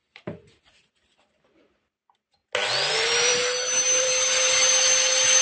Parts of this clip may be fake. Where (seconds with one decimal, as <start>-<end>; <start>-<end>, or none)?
0.0-2.4; 2.9-3.3; 4.0-5.4